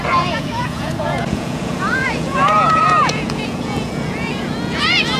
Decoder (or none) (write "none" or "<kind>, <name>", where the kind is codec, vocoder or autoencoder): vocoder, Vocos